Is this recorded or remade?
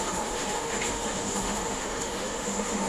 remade